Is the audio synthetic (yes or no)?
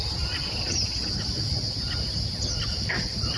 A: no